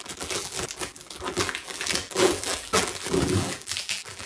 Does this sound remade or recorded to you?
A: remade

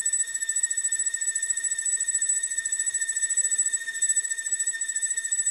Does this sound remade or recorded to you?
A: recorded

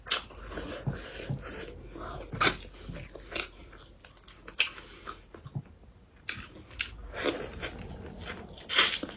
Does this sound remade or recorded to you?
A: recorded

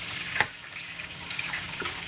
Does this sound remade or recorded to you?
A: remade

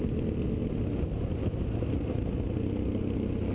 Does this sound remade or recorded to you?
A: recorded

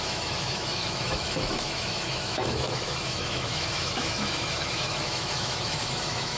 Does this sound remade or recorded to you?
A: remade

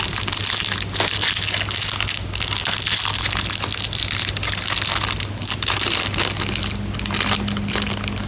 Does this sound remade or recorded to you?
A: recorded